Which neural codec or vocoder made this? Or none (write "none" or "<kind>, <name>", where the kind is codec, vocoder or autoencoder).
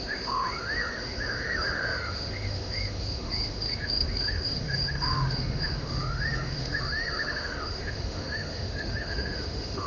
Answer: autoencoder, DAC-VAE